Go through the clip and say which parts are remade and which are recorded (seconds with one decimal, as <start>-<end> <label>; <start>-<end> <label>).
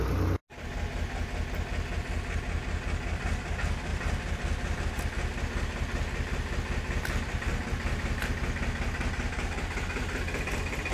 0.0-10.9 recorded